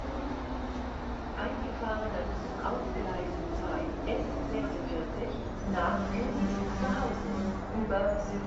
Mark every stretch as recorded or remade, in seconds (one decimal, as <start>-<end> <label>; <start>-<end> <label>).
0.0-3.8 remade; 3.8-8.5 recorded